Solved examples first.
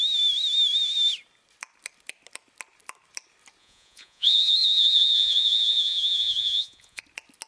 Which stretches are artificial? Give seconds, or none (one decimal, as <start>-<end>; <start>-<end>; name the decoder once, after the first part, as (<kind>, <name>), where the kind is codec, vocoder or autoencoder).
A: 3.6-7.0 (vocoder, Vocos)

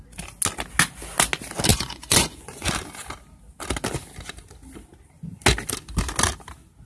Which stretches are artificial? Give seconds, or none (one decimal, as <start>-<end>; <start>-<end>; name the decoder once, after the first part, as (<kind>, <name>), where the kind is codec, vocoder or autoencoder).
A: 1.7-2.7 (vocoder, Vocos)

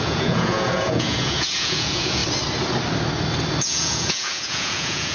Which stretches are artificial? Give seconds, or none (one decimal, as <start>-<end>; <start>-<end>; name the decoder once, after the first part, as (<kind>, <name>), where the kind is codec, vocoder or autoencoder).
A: 0.0-2.2 (vocoder, Vocos); 3.6-5.1